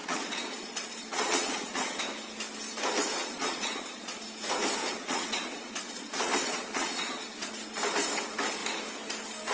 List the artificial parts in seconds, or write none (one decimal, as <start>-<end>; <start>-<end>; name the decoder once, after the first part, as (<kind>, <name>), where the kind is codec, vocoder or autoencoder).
0.0-2.0 (vocoder, Vocos); 3.1-4.2; 4.8-7.5